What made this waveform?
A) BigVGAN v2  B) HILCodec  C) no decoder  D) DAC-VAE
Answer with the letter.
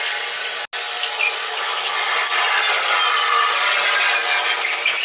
C